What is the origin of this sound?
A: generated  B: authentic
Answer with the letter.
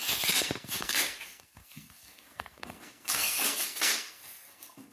A